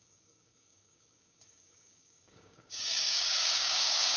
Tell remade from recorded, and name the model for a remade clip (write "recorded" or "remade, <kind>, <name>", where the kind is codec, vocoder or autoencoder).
remade, codec, DAC